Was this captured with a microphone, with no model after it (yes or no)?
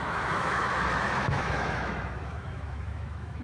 no